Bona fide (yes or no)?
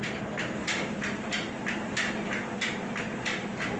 yes